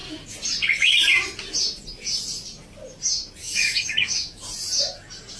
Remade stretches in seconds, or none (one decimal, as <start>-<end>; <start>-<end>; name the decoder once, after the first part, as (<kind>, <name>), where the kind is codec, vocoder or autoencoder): 3.4-4.4 (autoencoder, DAC-VAE)